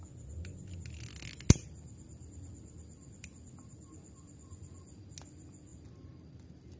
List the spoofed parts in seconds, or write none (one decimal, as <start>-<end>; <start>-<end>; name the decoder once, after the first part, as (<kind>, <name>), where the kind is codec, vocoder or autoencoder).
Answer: 5.7-6.8 (vocoder, BigVGAN v2)

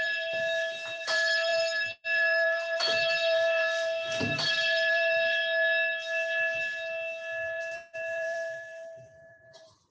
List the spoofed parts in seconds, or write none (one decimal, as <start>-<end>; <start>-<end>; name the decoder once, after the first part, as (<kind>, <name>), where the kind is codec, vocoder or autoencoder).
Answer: 0.0-5.4 (vocoder, BigVGAN v2); 7.6-9.9

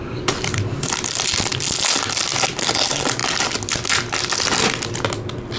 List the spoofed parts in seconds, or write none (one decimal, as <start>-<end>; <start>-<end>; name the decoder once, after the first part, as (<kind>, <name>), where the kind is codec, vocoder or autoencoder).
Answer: 0.0-1.5 (vocoder, BigVGAN v2); 2.5-3.2

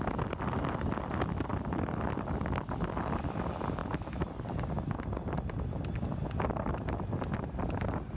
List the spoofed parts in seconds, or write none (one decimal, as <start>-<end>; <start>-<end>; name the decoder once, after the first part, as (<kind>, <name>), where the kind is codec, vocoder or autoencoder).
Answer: 1.5-3.0 (vocoder, BigVGAN v2)